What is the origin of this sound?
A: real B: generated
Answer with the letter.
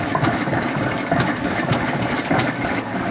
B